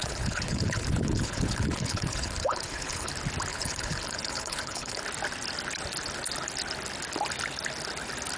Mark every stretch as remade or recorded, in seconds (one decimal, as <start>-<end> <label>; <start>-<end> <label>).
0.0-3.1 remade; 3.1-3.5 recorded; 3.5-5.0 remade; 5.0-8.4 recorded